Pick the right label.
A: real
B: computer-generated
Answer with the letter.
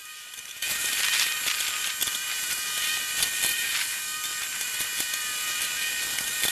A